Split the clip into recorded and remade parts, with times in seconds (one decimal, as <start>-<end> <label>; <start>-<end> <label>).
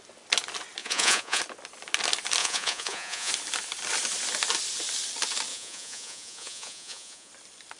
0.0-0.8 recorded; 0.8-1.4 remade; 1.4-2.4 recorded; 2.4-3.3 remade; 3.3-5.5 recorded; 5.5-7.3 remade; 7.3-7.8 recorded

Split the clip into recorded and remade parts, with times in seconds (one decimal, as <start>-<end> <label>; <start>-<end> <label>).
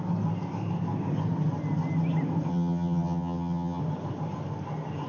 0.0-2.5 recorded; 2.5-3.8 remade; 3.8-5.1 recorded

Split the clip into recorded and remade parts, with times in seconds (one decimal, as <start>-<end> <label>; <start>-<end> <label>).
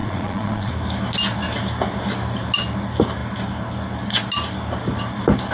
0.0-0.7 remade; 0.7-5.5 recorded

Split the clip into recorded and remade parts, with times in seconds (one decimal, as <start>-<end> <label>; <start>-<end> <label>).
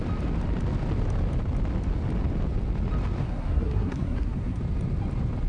0.0-3.2 recorded; 3.2-4.6 remade; 4.6-5.5 recorded